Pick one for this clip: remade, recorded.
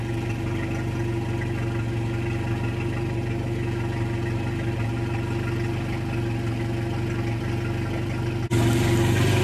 recorded